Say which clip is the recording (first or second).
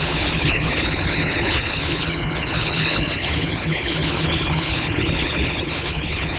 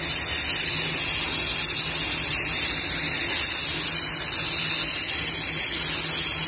second